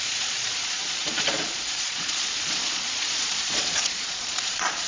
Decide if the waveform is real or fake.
fake